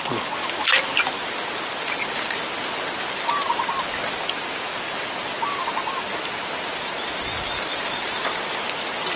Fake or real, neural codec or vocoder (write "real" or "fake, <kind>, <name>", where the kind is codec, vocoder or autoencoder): real